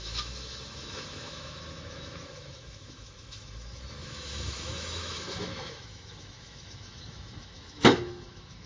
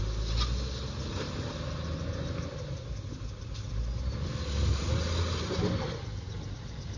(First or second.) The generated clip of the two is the first